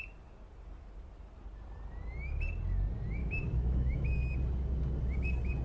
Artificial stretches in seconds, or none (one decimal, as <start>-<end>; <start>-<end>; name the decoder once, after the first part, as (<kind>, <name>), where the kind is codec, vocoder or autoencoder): 3.2-4.2 (autoencoder, DAC-VAE)